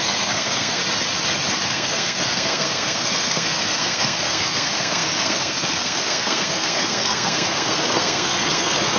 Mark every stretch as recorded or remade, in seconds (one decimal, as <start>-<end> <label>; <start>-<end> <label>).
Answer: 0.0-0.8 remade; 0.8-1.6 recorded; 1.6-9.0 remade